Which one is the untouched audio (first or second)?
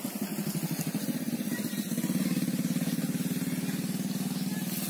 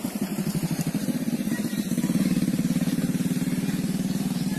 first